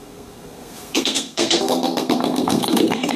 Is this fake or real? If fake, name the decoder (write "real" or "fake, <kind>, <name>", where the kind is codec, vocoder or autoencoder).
fake, codec, SNAC